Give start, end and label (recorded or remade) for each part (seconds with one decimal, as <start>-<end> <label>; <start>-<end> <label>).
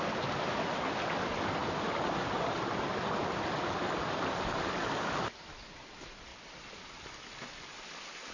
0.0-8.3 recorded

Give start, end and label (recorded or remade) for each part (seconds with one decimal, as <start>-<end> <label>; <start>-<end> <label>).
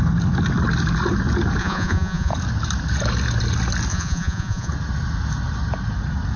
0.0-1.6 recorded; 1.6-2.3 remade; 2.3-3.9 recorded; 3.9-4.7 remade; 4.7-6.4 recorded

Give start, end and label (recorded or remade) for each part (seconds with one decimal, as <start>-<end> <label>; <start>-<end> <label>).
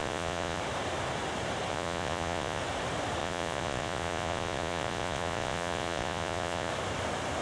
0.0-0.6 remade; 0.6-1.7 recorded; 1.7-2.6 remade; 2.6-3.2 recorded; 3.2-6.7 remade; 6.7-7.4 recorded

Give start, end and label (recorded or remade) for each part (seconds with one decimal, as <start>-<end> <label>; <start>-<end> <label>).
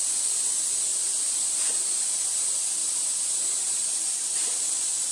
0.0-0.9 recorded; 0.9-2.0 remade; 2.0-2.8 recorded; 2.8-4.6 remade; 4.6-5.1 recorded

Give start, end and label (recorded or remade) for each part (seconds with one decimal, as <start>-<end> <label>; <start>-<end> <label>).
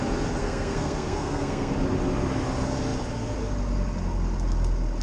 0.0-0.4 recorded; 0.4-1.7 remade; 1.7-5.0 recorded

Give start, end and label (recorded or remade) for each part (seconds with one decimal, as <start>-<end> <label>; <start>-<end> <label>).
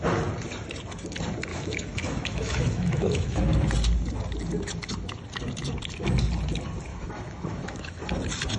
0.0-1.5 recorded; 1.5-3.4 remade; 3.4-6.9 recorded; 6.9-8.0 remade; 8.0-8.6 recorded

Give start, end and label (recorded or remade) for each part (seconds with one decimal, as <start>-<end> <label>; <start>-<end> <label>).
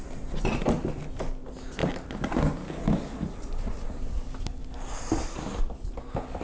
0.0-6.4 recorded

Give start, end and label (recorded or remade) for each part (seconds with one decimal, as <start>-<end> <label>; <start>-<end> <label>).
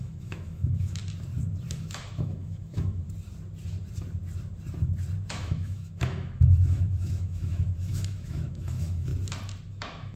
0.0-1.0 remade; 1.0-1.7 recorded; 1.7-3.0 remade; 3.0-5.3 recorded; 5.3-9.1 remade; 9.1-9.7 recorded; 9.7-10.2 remade